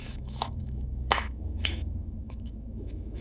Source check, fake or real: fake